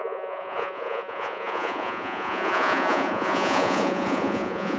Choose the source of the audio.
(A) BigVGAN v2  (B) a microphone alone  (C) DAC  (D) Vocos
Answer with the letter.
D